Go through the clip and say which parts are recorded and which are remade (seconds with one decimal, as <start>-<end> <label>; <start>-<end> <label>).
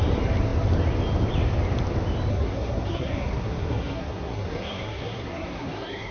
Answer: 0.0-2.3 recorded; 2.3-6.1 remade